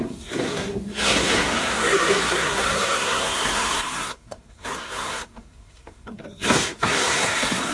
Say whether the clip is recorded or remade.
remade